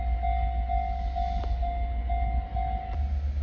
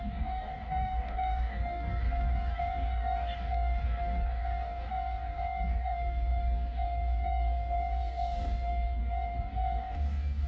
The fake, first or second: second